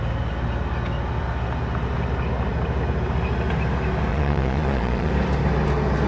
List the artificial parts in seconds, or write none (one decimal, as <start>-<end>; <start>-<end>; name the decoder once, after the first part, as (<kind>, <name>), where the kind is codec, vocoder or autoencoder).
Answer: 4.1-5.1 (vocoder, Vocos)